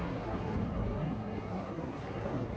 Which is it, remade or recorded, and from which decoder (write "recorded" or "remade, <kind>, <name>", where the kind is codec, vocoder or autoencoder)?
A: remade, codec, SNAC